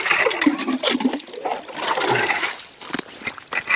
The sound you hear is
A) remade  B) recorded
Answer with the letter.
B